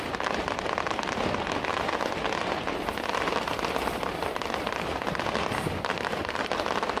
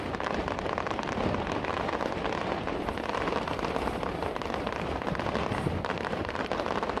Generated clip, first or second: second